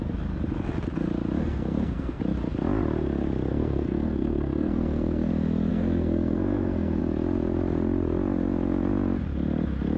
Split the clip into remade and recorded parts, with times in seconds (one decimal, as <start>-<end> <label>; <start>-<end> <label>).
0.0-1.4 recorded; 1.4-2.2 remade; 2.2-3.5 recorded; 3.5-5.3 remade; 5.3-5.7 recorded; 5.7-7.0 remade; 7.0-10.0 recorded